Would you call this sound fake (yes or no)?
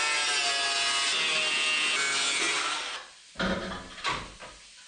no